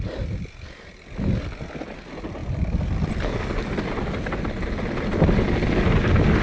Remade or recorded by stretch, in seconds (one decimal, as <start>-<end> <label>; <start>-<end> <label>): 0.0-6.4 recorded